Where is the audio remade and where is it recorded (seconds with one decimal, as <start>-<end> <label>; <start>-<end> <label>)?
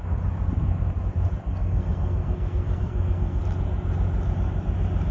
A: 0.0-1.5 recorded; 1.5-3.4 remade; 3.4-5.1 recorded